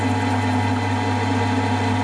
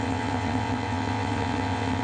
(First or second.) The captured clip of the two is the first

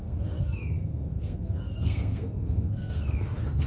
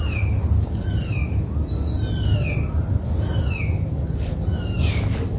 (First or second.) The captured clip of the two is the second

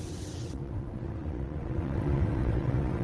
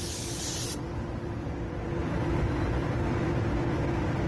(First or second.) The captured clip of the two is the second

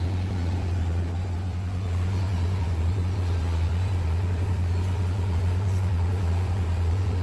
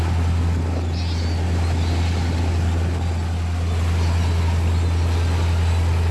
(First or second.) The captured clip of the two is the second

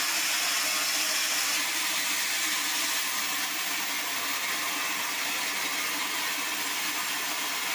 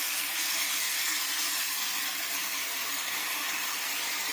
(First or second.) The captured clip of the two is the first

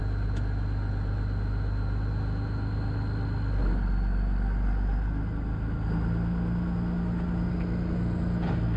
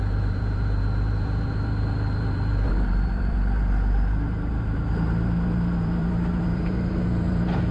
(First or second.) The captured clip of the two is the first